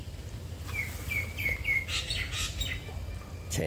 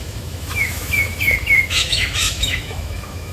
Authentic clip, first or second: first